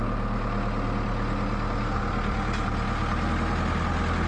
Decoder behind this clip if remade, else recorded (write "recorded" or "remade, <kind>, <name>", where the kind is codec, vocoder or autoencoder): recorded